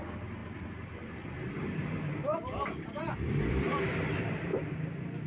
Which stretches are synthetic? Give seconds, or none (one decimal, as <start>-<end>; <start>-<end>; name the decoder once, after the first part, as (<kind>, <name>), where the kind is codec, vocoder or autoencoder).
0.0-4.5 (vocoder, BigVGAN v2)